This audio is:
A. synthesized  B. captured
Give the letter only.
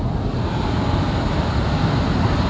B